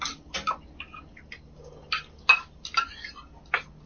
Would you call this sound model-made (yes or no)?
no